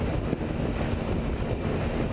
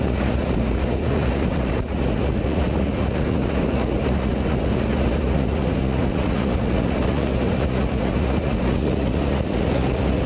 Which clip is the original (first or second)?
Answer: first